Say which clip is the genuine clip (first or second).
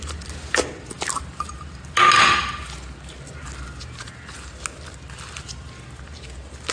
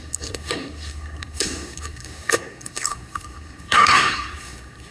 first